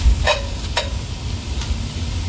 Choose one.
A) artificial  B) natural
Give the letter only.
B